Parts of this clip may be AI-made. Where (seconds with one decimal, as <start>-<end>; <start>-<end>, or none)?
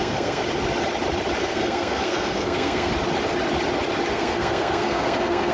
0.0-0.4; 1.4-2.9; 4.1-5.5